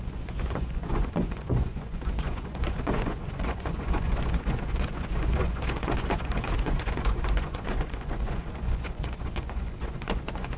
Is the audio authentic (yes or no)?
no